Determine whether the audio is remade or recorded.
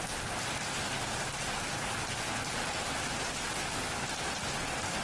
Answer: recorded